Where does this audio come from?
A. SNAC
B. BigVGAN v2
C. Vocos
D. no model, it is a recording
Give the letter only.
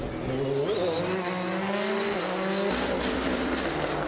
D